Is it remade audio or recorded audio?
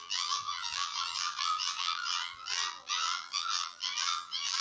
remade